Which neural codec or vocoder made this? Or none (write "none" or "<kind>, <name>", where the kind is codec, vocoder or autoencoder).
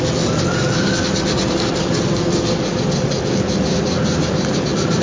none